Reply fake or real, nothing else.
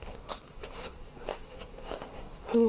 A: fake